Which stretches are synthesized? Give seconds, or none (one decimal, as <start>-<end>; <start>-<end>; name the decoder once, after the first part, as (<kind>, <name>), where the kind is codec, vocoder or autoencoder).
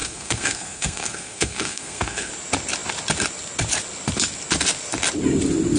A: 0.0-2.3 (codec, SNAC)